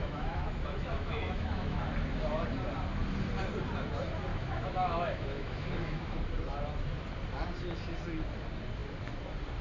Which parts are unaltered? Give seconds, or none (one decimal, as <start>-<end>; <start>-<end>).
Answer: 1.8-4.3; 6.2-9.6